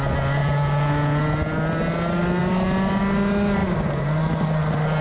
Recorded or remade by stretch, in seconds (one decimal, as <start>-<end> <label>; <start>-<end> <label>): 0.0-5.0 recorded